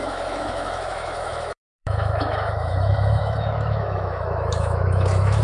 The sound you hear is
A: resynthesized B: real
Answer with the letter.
A